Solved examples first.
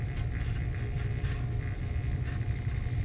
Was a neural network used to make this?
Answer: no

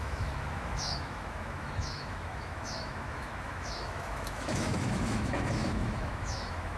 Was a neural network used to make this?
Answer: yes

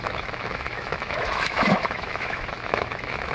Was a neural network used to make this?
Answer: yes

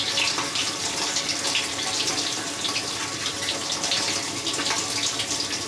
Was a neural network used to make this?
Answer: no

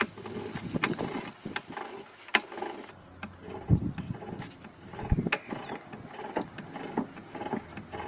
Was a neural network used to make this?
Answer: no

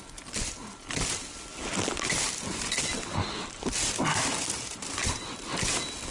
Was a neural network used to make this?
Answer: no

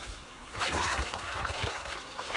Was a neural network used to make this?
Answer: yes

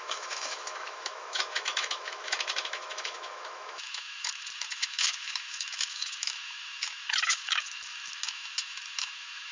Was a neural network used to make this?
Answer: yes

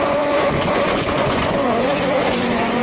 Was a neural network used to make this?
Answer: yes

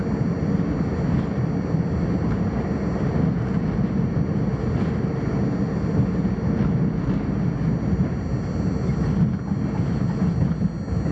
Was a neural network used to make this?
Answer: no